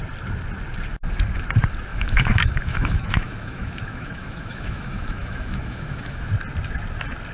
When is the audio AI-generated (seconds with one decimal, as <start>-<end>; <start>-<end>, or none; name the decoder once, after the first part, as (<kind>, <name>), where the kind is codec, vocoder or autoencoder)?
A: 1.9-6.3 (autoencoder, DAC-VAE)